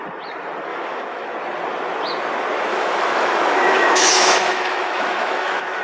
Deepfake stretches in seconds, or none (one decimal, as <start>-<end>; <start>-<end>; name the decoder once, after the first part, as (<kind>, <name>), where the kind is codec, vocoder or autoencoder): 0.7-1.3 (autoencoder, DAC-VAE); 2.7-5.8